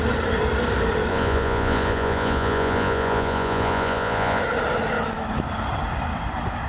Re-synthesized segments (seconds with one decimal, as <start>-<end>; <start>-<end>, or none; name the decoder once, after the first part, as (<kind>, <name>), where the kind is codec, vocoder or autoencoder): 1.1-4.4 (vocoder, Vocos)